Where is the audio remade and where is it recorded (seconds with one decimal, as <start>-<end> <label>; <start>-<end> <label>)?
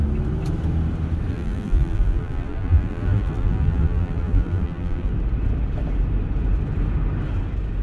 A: 0.0-1.3 recorded; 1.3-5.1 remade; 5.1-7.8 recorded